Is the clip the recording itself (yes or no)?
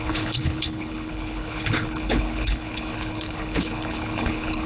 no